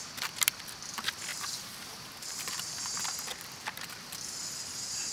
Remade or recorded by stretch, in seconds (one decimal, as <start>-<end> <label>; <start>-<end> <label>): 0.0-1.3 recorded; 1.3-2.7 remade; 2.7-5.1 recorded